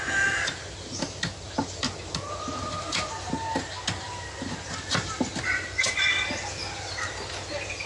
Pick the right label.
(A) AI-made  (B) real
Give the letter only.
B